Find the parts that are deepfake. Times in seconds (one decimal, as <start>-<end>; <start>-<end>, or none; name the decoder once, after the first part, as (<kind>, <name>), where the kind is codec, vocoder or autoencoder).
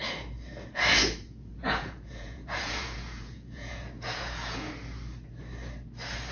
0.9-4.7 (vocoder, Vocos)